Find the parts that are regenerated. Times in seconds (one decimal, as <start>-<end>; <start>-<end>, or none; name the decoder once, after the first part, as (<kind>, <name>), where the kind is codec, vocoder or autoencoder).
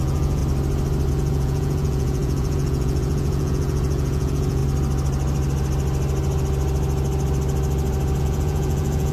0.0-0.4 (vocoder, Vocos); 1.1-4.6; 8.2-9.1